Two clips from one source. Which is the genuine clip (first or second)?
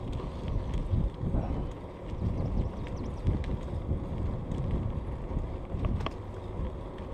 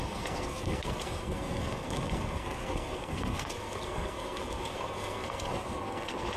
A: first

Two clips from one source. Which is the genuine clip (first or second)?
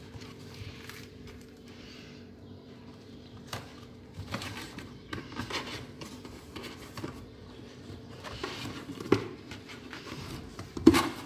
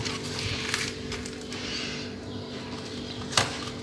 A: second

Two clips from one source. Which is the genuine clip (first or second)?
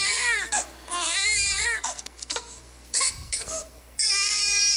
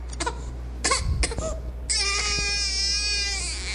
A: second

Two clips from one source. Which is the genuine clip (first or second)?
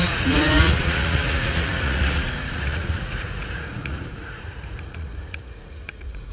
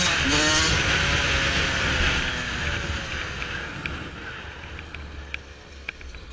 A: second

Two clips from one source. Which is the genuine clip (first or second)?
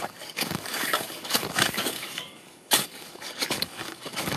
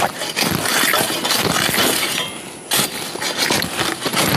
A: second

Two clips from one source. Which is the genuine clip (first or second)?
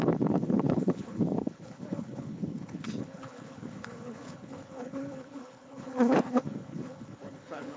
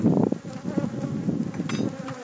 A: second